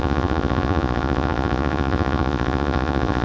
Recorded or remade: remade